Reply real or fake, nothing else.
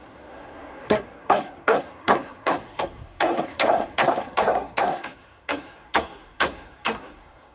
fake